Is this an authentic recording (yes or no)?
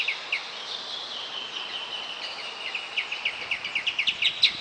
yes